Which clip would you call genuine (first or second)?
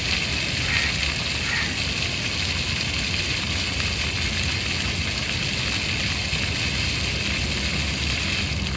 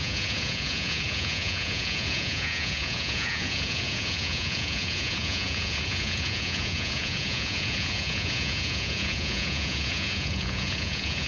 first